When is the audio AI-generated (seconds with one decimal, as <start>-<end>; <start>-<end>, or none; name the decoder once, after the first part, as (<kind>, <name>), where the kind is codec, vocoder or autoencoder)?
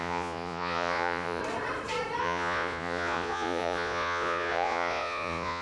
0.0-1.4 (vocoder, Vocos); 2.2-5.6